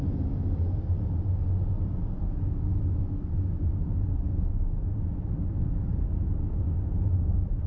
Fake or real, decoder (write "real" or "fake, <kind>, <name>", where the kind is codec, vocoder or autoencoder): real